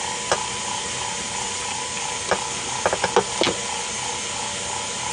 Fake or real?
real